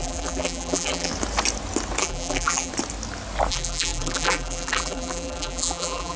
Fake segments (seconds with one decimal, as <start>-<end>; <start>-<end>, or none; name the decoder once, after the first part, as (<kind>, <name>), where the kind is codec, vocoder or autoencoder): 0.0-1.1 (vocoder, BigVGAN v2); 2.0-2.7; 3.5-6.2